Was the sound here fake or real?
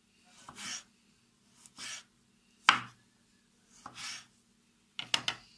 real